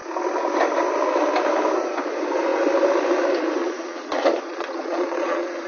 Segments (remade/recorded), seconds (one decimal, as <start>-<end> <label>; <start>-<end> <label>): 0.0-3.6 recorded; 3.6-5.7 remade